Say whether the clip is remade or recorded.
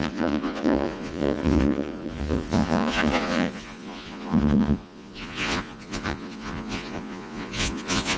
remade